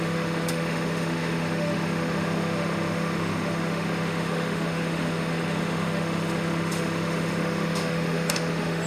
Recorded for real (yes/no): no